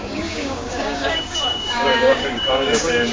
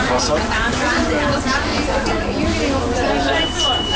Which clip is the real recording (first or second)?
second